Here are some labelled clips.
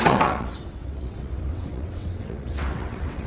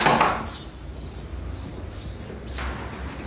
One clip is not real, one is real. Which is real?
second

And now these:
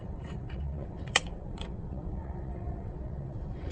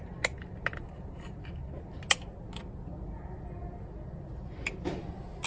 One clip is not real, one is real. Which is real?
second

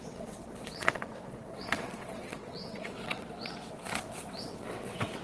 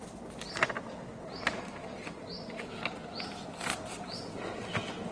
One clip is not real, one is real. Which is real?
second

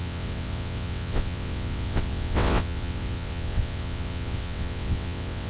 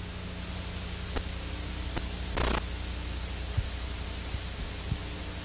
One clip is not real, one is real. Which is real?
second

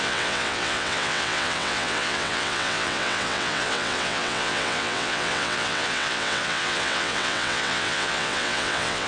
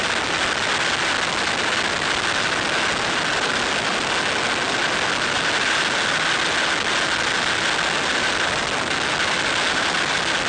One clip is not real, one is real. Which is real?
second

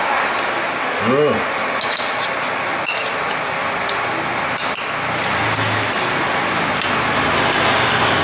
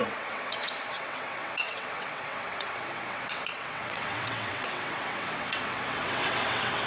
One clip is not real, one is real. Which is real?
first